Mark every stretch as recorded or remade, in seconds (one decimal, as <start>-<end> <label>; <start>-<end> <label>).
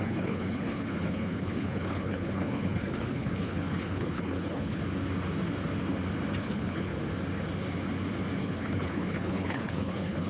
0.0-4.8 remade; 4.8-6.4 recorded; 6.4-6.9 remade; 6.9-8.4 recorded; 8.4-10.3 remade